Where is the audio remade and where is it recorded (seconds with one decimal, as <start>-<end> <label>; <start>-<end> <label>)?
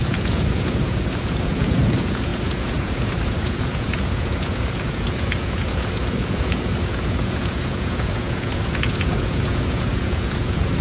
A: 0.0-10.8 remade